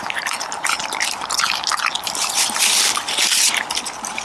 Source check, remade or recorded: recorded